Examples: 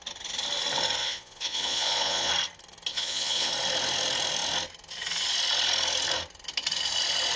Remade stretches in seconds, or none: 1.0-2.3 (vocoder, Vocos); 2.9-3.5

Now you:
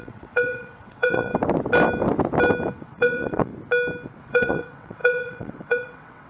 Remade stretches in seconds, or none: 0.0-1.3 (vocoder, WaveNeXt); 2.8-3.5; 4.2-6.3

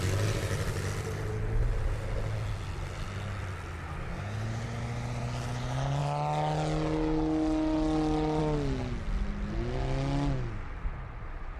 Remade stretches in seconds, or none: none